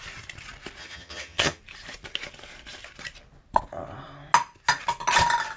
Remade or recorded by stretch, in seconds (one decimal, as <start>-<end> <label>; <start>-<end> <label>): 0.0-0.8 recorded; 0.8-1.6 remade; 1.6-5.6 recorded